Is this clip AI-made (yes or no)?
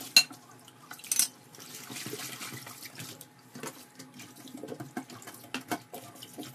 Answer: no